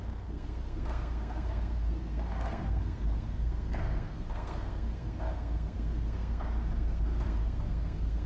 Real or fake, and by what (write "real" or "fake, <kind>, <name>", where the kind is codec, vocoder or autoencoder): fake, codec, SNAC